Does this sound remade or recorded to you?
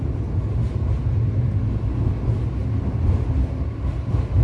recorded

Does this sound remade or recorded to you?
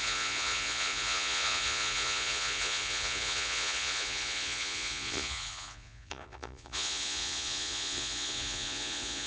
remade